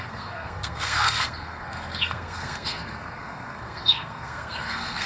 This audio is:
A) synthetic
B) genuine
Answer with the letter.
A